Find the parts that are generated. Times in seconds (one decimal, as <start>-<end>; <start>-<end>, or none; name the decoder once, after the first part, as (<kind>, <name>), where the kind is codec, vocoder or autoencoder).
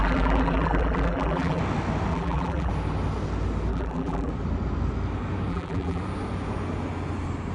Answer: 0.0-1.6 (vocoder, BigVGAN v2); 2.1-2.7; 3.7-4.3; 5.5-6.0